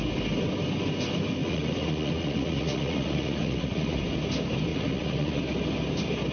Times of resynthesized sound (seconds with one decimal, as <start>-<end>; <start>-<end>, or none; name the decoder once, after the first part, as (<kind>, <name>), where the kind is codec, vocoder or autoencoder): 1.4-4.0 (vocoder, Vocos); 4.7-5.4